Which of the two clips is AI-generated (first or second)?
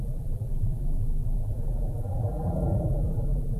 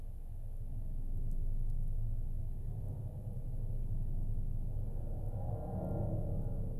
first